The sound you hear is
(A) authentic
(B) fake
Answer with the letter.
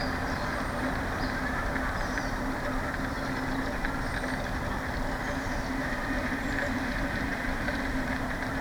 B